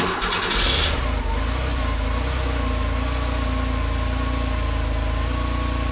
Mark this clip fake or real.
real